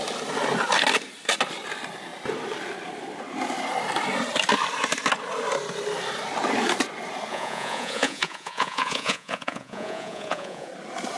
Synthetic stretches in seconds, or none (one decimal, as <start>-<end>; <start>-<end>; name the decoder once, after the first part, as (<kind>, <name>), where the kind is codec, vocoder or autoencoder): 7.3-10.7 (vocoder, Vocos)